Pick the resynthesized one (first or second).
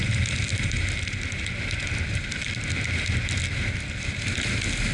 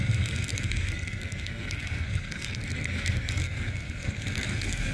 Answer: second